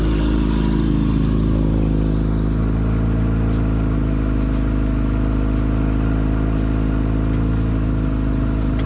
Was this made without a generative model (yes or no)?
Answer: yes